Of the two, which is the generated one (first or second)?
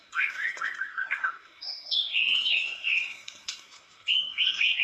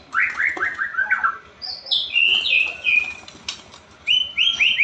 first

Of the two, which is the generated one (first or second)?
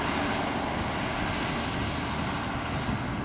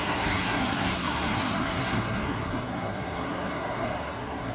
second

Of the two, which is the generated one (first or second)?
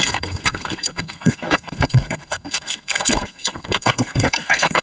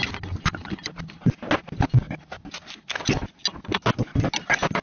first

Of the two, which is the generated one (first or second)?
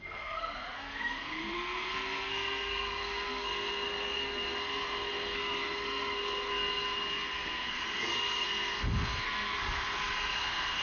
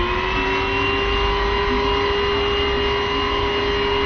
first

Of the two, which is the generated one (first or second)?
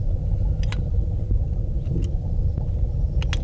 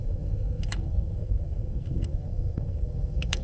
second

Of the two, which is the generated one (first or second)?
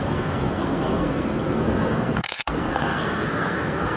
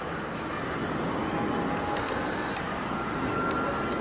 first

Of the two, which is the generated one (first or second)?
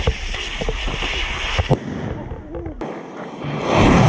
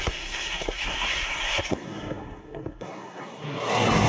second